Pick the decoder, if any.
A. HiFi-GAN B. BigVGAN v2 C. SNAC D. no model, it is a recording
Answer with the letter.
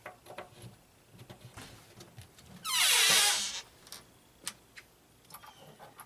D